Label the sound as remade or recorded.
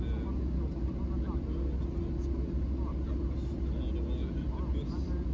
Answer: recorded